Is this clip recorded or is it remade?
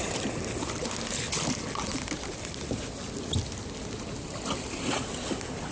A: recorded